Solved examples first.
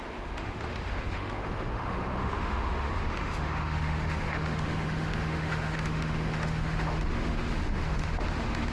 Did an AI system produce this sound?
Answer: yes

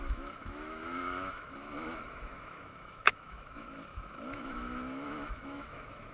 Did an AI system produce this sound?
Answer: yes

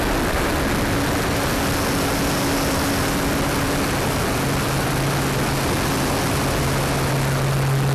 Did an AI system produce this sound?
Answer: no